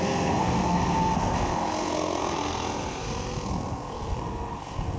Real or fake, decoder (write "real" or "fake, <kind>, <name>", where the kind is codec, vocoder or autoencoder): fake, codec, SNAC